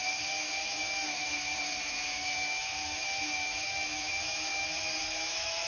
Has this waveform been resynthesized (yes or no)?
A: yes